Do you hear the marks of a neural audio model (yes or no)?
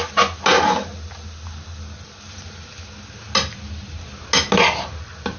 no